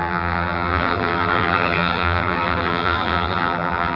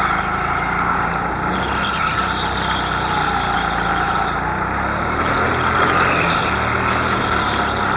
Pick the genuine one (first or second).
second